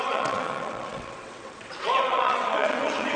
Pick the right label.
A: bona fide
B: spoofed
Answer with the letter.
B